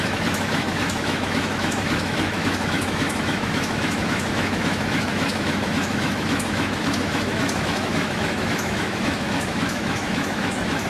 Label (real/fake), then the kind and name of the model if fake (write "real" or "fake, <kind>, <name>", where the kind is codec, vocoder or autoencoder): fake, autoencoder, DAC-VAE